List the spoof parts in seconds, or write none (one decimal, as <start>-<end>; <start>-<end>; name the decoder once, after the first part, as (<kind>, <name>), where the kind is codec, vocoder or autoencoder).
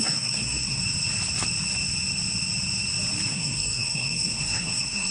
0.0-0.8 (codec, SNAC); 3.3-5.1